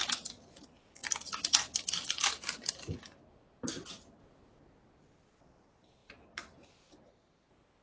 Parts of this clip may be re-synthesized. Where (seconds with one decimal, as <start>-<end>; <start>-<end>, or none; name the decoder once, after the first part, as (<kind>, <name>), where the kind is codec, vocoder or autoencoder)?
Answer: none